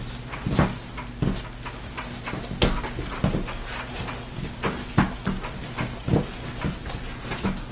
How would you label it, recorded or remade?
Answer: recorded